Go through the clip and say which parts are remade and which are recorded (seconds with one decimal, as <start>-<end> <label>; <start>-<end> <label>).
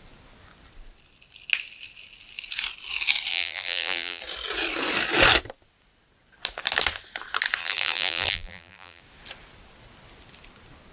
0.0-3.3 recorded; 3.3-4.2 remade; 4.2-7.6 recorded; 7.6-9.0 remade; 9.0-10.9 recorded